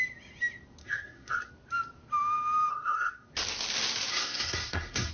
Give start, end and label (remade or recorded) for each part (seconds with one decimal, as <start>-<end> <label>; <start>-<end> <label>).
0.0-0.8 recorded; 0.8-1.5 remade; 1.5-2.7 recorded; 2.7-3.3 remade; 3.3-4.1 recorded; 4.1-5.1 remade